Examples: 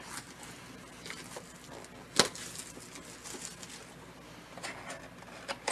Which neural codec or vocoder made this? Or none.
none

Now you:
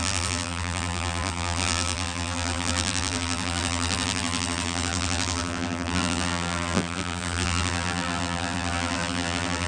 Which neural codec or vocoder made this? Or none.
vocoder, BigVGAN v2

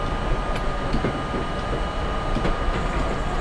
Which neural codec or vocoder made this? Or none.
none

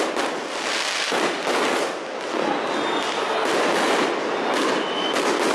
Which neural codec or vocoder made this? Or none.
none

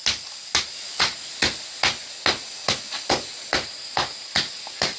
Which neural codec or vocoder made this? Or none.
none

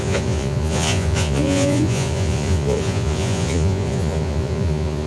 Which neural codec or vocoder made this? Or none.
vocoder, Vocos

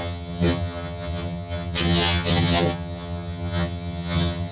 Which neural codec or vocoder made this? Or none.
vocoder, HiFi-GAN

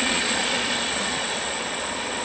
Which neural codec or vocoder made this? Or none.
vocoder, Vocos